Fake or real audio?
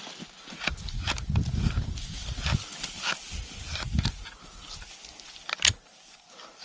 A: real